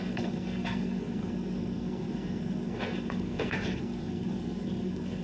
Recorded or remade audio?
remade